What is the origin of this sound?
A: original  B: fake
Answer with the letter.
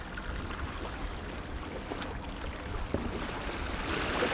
A